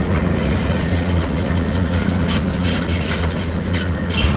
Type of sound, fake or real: fake